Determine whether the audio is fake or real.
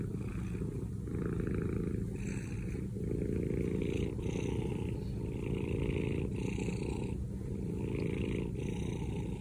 real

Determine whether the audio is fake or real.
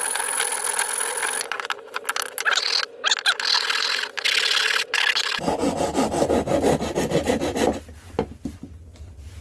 real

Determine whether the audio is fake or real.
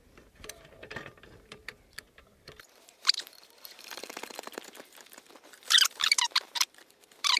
fake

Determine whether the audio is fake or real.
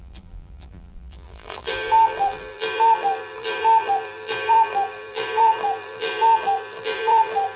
fake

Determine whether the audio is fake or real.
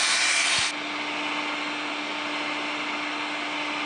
real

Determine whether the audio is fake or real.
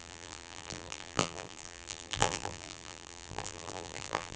fake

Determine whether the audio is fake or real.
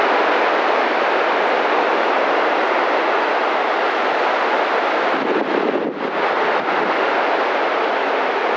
real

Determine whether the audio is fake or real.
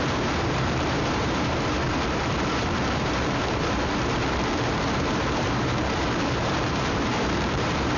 fake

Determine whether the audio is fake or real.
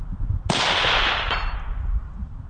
real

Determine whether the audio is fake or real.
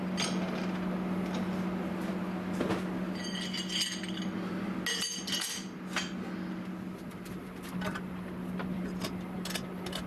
real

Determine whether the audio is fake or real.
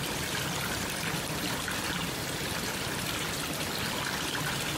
real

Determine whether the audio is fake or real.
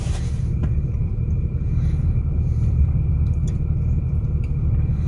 fake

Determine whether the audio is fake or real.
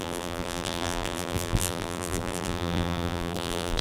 fake